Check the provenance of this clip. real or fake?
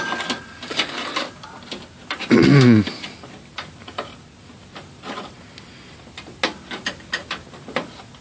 real